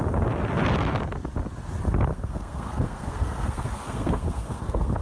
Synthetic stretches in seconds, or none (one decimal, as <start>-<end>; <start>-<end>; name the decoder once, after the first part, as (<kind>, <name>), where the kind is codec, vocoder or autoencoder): 2.1-5.0 (codec, SNAC)